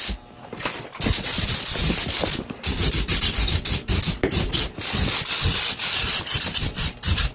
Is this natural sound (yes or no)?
yes